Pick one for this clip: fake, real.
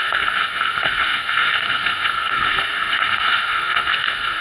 fake